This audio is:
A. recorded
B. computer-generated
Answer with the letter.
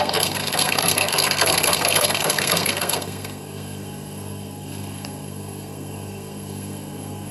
B